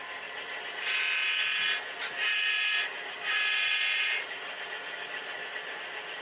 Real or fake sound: real